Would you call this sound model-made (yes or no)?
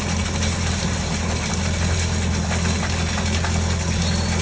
no